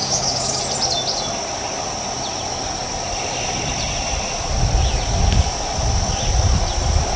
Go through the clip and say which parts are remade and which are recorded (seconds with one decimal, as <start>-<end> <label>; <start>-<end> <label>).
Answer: 0.0-0.6 remade; 0.6-7.2 recorded